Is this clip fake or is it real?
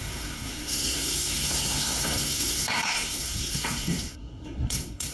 fake